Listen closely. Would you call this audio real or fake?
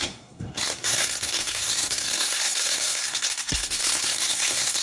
fake